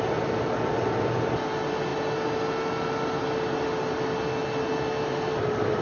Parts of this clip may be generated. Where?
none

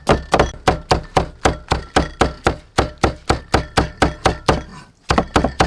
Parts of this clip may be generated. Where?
none

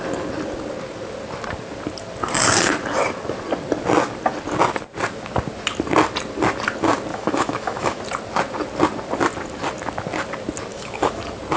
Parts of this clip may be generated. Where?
7.1-8.0; 10.7-11.2

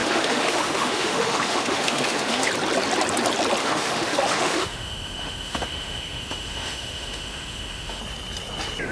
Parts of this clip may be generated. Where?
0.0-2.5; 3.6-8.0

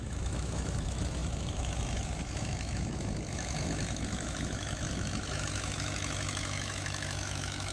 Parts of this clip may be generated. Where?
0.0-7.7

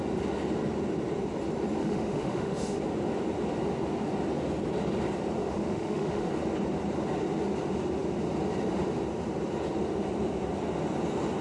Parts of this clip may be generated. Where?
1.8-2.8; 5.4-6.3

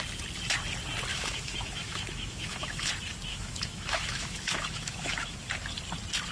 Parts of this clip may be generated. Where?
1.1-2.9; 3.3-5.5